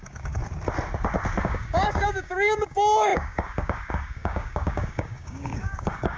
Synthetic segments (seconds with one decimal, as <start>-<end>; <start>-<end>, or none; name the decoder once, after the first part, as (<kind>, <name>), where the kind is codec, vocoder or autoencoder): 0.0-0.4 (codec, DAC); 1.4-6.2